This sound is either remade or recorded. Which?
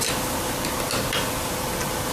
recorded